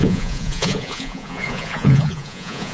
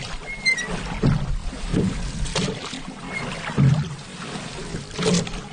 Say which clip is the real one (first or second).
second